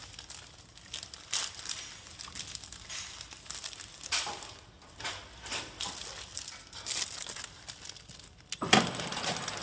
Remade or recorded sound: recorded